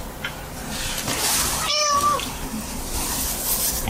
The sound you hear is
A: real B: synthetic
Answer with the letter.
A